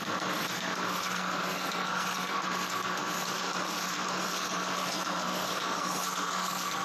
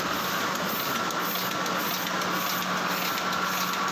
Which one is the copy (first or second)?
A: first